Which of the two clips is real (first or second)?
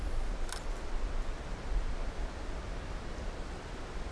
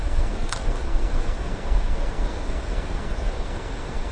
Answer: first